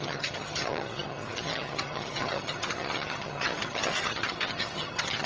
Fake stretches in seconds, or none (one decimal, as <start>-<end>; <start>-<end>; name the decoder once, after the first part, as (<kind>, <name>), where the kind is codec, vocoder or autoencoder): 0.0-5.3 (vocoder, HiFi-GAN)

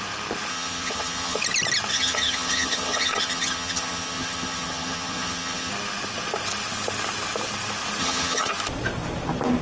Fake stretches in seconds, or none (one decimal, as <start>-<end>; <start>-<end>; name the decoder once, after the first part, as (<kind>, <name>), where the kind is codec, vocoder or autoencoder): 0.5-1.4 (vocoder, HiFi-GAN); 1.9-5.7; 8.0-8.5

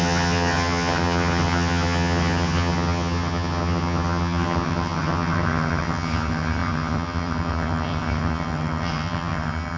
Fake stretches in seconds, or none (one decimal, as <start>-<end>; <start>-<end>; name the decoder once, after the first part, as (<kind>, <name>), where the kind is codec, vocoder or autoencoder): 0.0-9.8 (vocoder, HiFi-GAN)

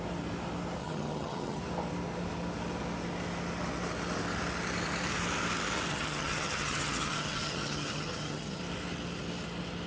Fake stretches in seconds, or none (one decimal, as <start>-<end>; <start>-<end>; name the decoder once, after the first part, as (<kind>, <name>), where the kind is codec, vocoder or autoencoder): 0.8-1.6 (vocoder, HiFi-GAN); 5.9-8.6

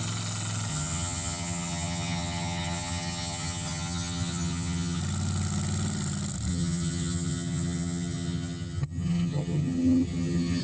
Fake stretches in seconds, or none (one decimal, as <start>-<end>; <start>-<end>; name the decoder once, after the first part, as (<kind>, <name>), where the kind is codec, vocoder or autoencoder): 0.7-5.0 (vocoder, HiFi-GAN); 6.5-10.6